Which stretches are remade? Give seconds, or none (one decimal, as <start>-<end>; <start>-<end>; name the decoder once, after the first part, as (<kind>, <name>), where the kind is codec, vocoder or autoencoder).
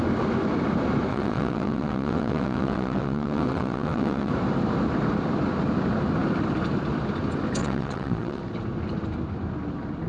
1.1-4.3 (vocoder, WaveNeXt); 7.6-8.4